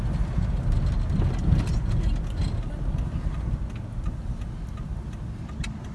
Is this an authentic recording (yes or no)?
yes